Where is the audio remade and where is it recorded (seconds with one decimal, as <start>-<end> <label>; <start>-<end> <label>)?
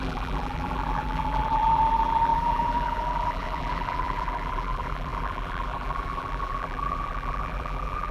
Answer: 0.0-8.1 remade